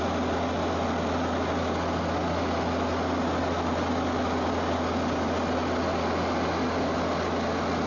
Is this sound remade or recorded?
recorded